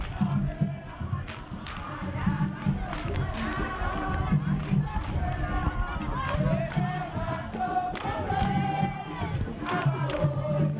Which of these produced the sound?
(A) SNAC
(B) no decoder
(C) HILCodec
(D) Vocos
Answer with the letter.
B